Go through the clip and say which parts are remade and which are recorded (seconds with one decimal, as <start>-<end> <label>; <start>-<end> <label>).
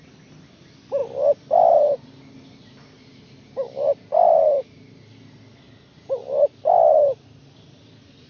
0.0-8.3 recorded